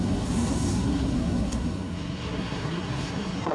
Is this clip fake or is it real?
fake